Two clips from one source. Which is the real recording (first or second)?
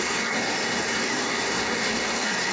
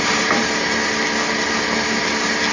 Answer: second